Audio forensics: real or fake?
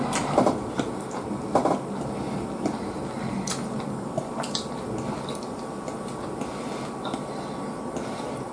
real